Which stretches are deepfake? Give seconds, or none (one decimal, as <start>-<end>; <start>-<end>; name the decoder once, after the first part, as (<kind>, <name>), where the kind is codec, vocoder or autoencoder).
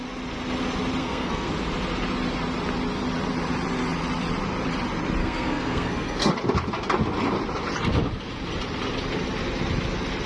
1.0-1.5 (codec, SNAC); 5.2-6.3